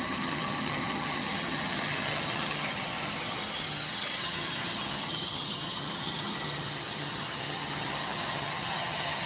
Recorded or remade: remade